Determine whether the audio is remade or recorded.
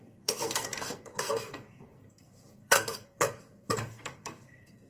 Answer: remade